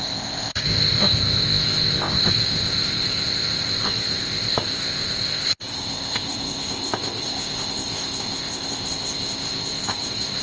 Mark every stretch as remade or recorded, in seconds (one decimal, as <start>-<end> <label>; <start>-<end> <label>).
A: 0.0-10.4 remade